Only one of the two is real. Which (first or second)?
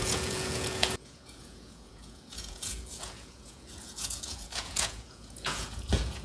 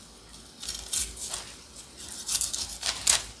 second